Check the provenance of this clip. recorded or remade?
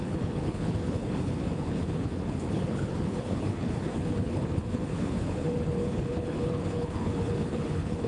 remade